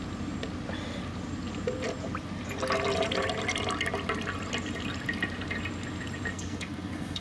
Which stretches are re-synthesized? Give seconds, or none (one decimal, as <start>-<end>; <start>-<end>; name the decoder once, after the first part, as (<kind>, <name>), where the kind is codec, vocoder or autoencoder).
6.3-7.2 (codec, SNAC)

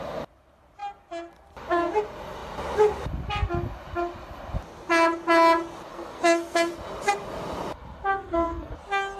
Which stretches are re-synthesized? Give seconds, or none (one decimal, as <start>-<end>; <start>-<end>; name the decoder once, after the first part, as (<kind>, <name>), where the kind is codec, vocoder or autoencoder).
5.9-6.7 (codec, SNAC); 8.1-8.7